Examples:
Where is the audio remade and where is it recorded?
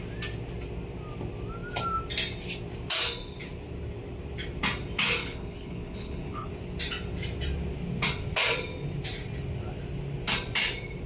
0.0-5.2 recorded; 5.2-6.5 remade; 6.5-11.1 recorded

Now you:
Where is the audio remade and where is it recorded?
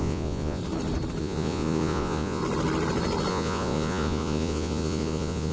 0.0-0.6 remade; 0.6-1.2 recorded; 1.2-2.4 remade; 2.4-3.3 recorded; 3.3-5.5 remade